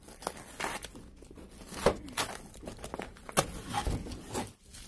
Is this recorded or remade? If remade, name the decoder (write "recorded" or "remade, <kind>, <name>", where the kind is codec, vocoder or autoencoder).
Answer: recorded